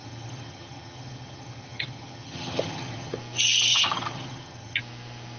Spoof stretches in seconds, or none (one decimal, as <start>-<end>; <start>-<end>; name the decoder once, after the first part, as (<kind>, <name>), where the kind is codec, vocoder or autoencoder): 0.0-3.2 (vocoder, HiFi-GAN); 3.7-4.8

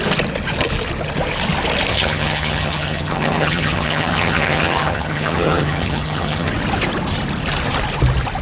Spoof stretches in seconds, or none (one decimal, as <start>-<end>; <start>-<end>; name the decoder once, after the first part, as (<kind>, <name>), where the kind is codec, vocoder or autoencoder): 1.9-6.5 (vocoder, HiFi-GAN)

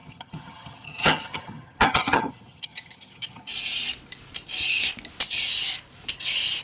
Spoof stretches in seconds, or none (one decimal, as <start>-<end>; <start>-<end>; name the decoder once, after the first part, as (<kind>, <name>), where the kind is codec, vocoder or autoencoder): 0.0-3.5 (vocoder, HiFi-GAN)